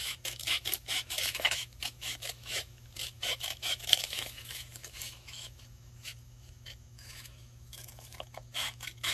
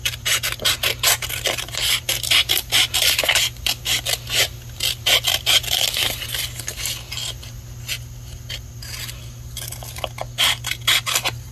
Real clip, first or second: second